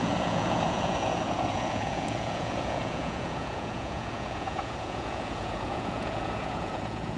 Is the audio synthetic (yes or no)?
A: yes